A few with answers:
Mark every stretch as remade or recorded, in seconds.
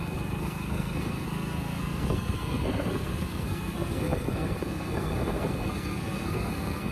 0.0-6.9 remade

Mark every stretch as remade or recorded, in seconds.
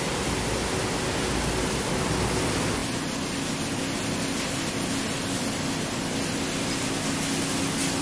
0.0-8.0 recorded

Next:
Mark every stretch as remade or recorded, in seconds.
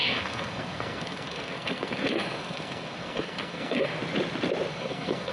0.0-4.0 remade; 4.0-4.7 recorded; 4.7-5.3 remade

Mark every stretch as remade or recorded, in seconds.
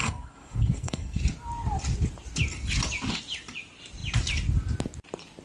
0.0-1.2 remade; 1.2-5.4 recorded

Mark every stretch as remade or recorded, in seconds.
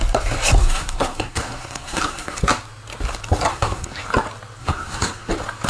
0.0-0.6 recorded; 0.6-2.4 remade; 2.4-3.5 recorded; 3.5-4.0 remade; 4.0-4.6 recorded; 4.6-5.3 remade; 5.3-5.7 recorded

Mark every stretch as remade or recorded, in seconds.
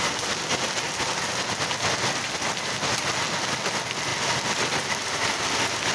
0.0-5.9 recorded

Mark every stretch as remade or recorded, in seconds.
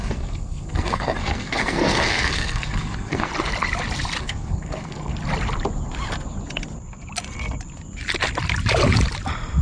0.0-3.3 remade; 3.3-4.2 recorded; 4.2-5.1 remade; 5.1-9.6 recorded